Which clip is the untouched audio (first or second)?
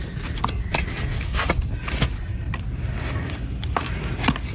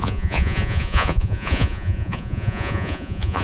first